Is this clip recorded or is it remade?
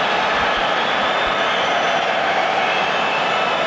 recorded